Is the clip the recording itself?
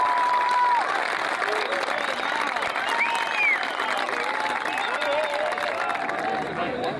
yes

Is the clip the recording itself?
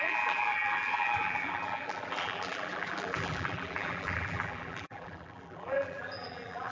no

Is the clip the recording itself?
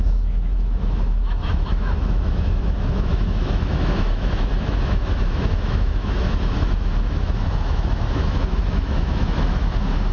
no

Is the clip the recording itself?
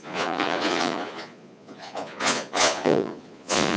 no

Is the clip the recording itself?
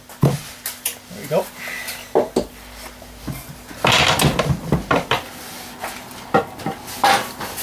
yes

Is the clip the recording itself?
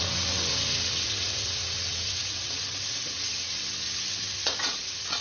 no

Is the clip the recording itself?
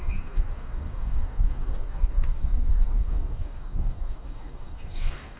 no